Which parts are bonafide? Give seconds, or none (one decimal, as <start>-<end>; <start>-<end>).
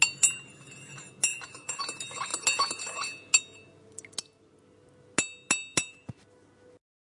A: 0.0-1.3; 1.8-7.0